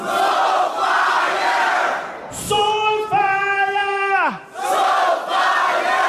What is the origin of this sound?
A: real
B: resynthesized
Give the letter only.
A